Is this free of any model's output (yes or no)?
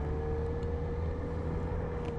yes